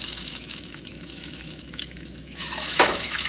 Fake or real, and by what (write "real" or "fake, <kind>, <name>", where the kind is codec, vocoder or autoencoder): fake, autoencoder, DAC-VAE